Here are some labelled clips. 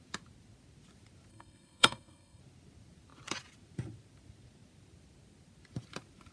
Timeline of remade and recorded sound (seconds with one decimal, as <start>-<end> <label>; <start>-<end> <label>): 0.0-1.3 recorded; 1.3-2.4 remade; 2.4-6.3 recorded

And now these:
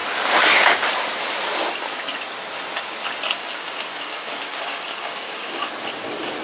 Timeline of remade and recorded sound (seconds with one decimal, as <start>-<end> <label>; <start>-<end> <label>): 0.0-3.4 recorded; 3.4-5.7 remade; 5.7-6.4 recorded

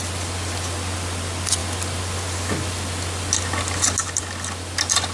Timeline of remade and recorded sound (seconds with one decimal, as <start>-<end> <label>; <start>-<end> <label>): 0.0-5.1 recorded

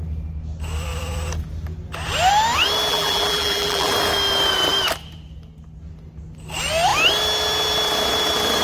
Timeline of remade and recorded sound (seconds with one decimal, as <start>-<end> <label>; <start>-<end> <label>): 0.0-2.9 recorded; 2.9-3.9 remade; 3.9-8.6 recorded